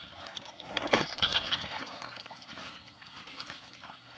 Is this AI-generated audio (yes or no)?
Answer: yes